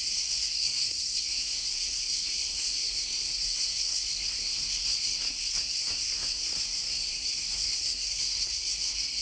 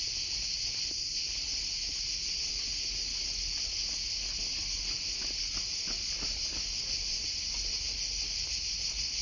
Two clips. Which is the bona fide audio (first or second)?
second